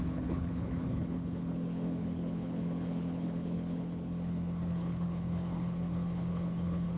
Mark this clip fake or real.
fake